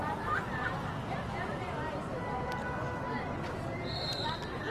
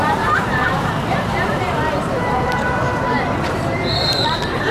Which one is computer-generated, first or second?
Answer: second